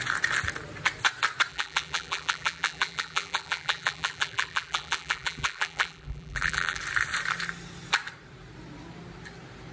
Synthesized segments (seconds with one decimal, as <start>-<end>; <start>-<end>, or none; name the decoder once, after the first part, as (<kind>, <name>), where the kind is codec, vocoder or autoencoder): 1.5-6.8 (vocoder, BigVGAN v2)